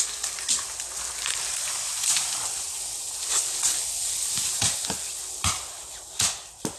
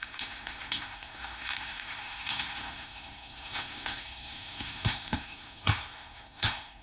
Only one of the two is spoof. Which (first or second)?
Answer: second